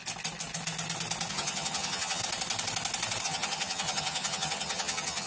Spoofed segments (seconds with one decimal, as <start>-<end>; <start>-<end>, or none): 1.3-2.2; 3.2-5.3